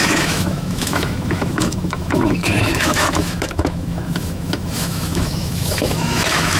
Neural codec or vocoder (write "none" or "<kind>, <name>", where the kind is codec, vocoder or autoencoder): autoencoder, DAC-VAE